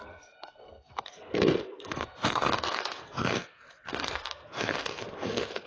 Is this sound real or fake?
fake